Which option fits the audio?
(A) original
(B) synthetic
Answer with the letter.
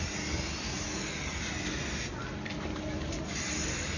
A